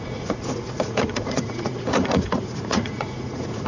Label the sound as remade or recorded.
remade